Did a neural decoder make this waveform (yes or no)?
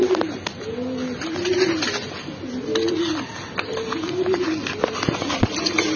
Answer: no